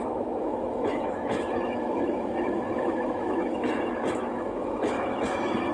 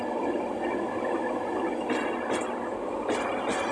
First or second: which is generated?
first